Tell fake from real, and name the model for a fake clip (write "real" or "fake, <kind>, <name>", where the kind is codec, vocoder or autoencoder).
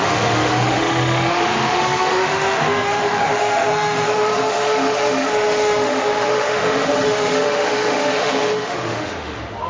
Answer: fake, autoencoder, DAC-VAE